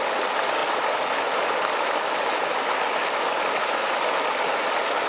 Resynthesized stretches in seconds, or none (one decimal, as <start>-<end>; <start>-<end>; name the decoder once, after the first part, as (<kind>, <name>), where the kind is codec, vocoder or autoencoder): none